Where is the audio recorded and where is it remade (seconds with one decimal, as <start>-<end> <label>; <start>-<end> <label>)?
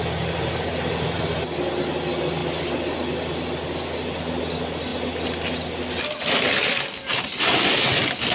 0.0-8.3 recorded